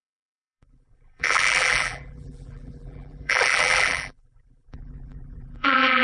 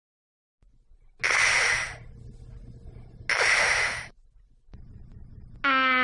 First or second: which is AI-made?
first